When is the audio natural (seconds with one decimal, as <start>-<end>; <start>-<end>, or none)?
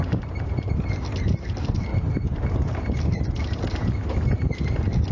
0.0-5.1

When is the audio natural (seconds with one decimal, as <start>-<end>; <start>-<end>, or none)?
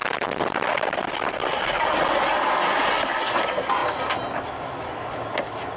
0.0-5.8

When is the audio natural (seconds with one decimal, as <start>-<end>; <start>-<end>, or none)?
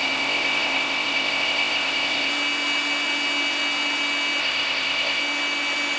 2.3-4.4; 5.2-6.0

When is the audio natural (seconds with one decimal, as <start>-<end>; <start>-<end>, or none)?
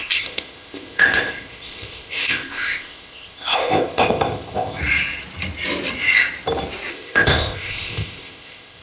4.8-6.9